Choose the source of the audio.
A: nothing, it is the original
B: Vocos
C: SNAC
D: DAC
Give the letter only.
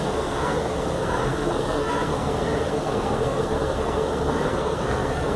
C